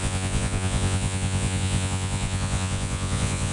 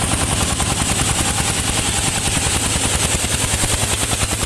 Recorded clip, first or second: second